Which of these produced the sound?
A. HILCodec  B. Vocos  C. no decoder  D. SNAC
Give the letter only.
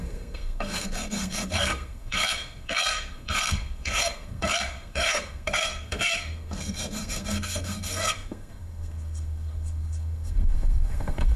D